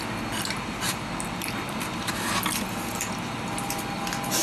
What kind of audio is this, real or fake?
real